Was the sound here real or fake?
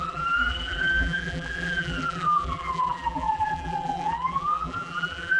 fake